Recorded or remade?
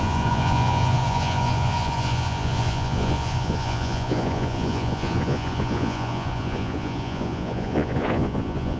remade